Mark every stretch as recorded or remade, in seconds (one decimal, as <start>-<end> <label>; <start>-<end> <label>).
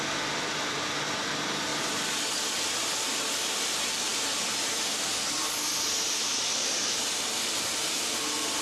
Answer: 0.0-8.6 recorded